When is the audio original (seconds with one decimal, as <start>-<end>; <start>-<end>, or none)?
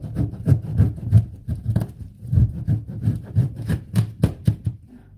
none